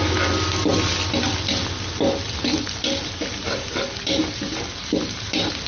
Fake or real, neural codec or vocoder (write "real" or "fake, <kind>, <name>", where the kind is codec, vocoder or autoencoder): real